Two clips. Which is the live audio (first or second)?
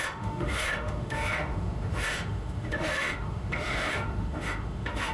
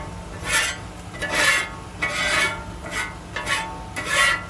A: second